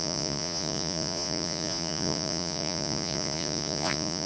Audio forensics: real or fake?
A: fake